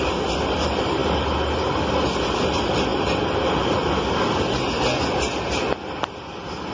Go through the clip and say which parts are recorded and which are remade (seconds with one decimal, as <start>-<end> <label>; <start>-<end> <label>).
0.0-6.7 recorded